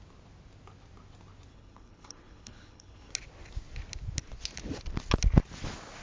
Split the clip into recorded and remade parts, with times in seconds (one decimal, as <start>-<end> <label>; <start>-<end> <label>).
0.0-1.5 recorded; 1.5-3.1 remade; 3.1-6.0 recorded